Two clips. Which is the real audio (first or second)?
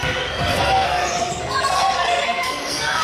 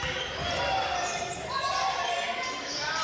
second